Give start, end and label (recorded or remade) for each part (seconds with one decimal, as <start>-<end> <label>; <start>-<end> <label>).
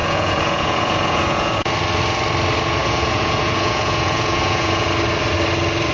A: 0.0-1.7 remade; 1.7-2.8 recorded; 2.8-4.9 remade; 4.9-5.9 recorded